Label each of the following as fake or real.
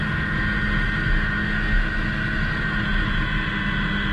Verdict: real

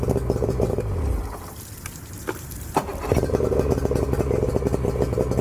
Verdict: real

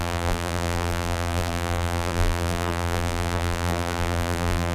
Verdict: fake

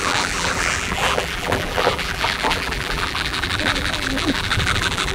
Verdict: fake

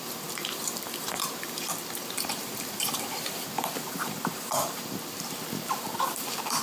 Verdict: fake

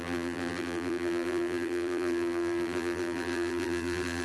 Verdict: fake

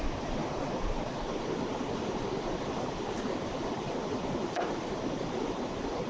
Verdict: fake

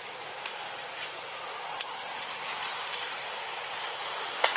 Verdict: real